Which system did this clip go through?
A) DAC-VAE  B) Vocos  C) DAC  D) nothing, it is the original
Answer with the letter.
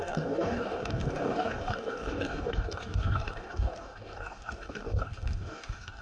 C